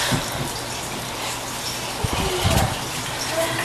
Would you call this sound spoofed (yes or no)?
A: no